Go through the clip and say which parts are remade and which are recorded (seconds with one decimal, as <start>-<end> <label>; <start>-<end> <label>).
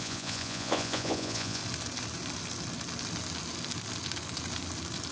0.0-1.6 remade; 1.6-5.1 recorded